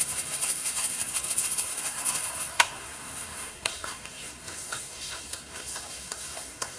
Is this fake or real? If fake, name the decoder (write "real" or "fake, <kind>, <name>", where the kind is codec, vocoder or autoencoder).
fake, codec, SNAC